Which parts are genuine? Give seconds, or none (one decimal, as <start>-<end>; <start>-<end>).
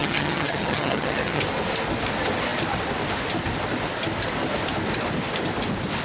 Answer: 1.4-6.0